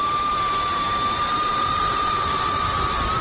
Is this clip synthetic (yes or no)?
yes